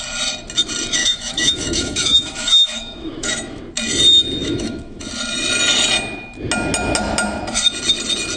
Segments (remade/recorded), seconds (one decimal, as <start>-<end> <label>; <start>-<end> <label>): 0.0-1.0 recorded; 1.0-3.6 remade; 3.6-4.4 recorded; 4.4-5.0 remade; 5.0-8.4 recorded